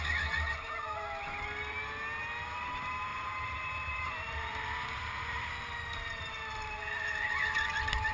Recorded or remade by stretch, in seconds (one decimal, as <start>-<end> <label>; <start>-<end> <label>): 0.0-3.1 recorded; 3.1-5.5 remade; 5.5-8.1 recorded